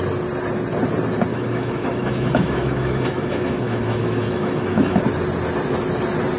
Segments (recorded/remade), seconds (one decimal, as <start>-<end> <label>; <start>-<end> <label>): 0.0-1.3 recorded; 1.3-5.0 remade; 5.0-6.4 recorded